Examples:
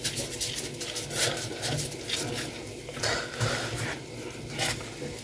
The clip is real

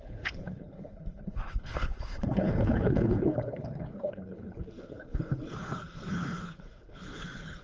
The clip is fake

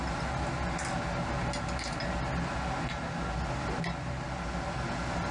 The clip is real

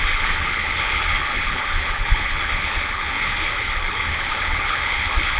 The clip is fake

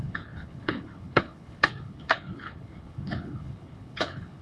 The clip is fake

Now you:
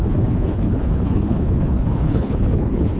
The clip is fake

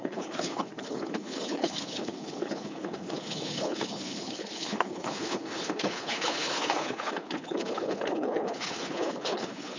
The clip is fake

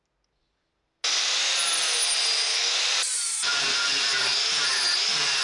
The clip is real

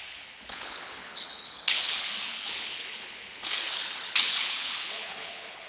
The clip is fake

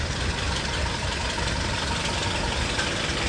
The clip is real